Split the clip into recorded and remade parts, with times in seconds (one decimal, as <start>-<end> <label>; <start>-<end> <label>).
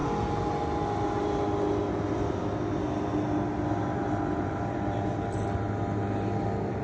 0.0-6.8 recorded